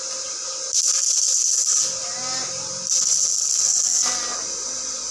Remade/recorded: recorded